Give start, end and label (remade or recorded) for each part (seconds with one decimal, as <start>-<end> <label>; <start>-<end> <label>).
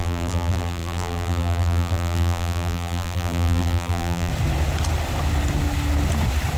0.0-4.3 remade; 4.3-6.6 recorded